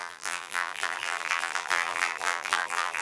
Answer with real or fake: fake